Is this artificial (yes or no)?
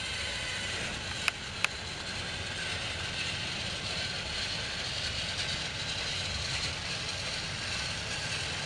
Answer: no